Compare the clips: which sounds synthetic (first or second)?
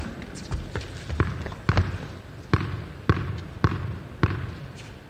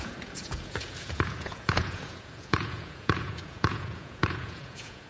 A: second